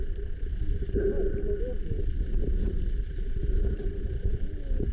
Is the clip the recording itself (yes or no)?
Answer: no